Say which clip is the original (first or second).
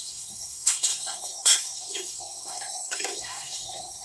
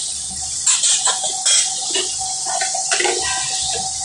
second